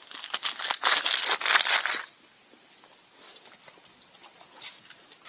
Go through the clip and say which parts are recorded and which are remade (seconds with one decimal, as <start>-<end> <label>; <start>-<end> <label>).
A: 0.0-5.3 recorded